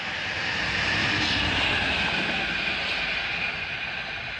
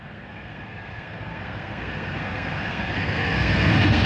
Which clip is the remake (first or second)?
second